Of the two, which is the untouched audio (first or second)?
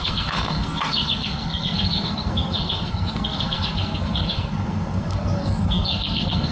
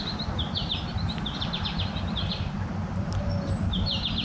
second